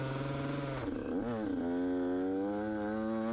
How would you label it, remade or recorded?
recorded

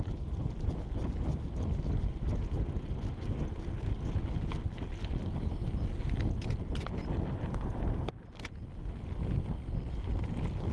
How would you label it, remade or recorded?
recorded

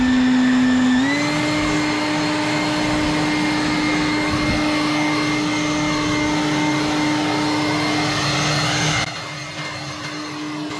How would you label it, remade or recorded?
recorded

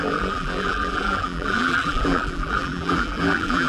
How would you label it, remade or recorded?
remade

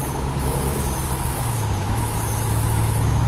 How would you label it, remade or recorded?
remade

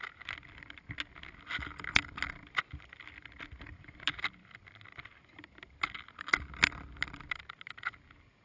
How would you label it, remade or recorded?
recorded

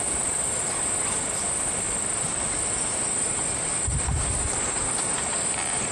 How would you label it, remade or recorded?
recorded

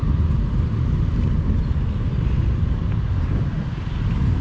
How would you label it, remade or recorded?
recorded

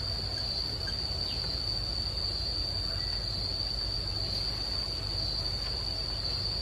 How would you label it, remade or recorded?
recorded